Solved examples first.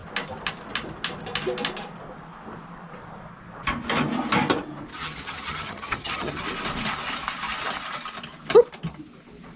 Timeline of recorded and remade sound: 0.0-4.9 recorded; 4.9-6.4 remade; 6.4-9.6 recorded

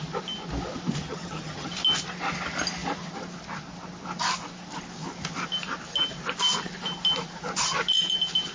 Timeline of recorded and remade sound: 0.0-1.0 recorded; 1.0-1.7 remade; 1.7-8.5 recorded

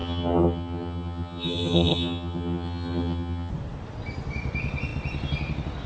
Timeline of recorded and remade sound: 0.0-3.5 remade; 3.5-5.9 recorded

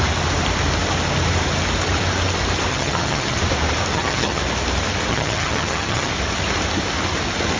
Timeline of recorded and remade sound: 0.0-2.7 recorded; 2.7-3.4 remade; 3.4-3.9 recorded; 3.9-4.4 remade; 4.4-5.1 recorded; 5.1-6.1 remade; 6.1-7.6 recorded

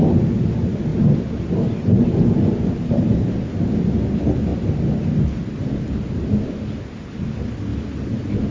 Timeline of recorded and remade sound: 0.0-8.5 recorded

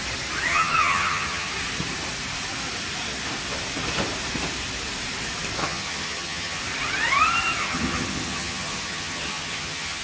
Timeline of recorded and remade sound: 0.0-0.5 recorded; 0.5-1.5 remade; 1.5-5.6 recorded; 5.6-6.6 remade; 6.6-7.6 recorded; 7.6-10.0 remade

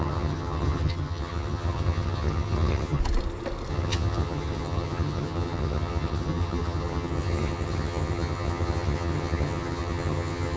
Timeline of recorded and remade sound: 0.0-3.0 remade; 3.0-3.7 recorded; 3.7-10.6 remade

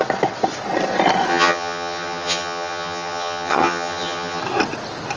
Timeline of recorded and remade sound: 0.0-1.3 recorded; 1.3-4.4 remade; 4.4-5.2 recorded